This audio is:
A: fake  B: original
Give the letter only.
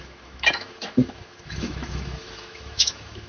A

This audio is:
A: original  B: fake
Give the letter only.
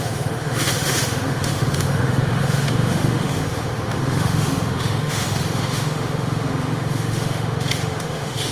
B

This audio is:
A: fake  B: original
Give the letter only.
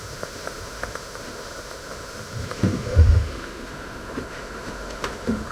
A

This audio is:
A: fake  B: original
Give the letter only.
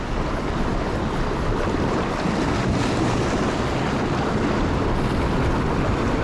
B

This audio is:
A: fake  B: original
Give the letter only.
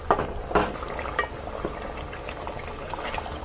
B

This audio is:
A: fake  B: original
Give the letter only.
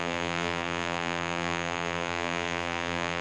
A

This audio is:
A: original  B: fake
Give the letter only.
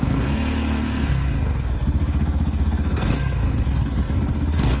B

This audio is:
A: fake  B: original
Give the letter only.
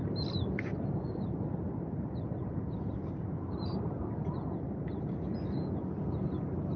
B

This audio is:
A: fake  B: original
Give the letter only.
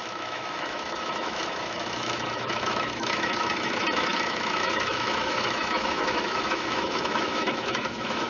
A